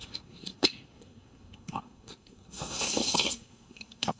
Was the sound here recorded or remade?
remade